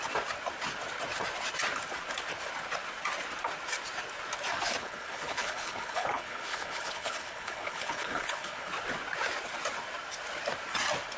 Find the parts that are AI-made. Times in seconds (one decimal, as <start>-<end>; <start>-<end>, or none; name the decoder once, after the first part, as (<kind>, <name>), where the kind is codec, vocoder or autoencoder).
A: 4.8-8.7 (codec, HILCodec)